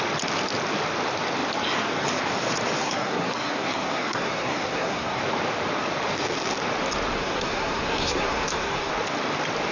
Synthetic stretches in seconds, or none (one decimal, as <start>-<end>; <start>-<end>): 2.8-5.2; 7.2-8.9